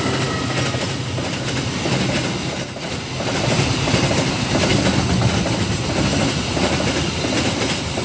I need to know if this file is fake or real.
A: real